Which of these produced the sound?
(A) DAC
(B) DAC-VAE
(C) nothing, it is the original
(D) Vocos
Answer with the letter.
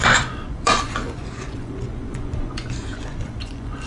D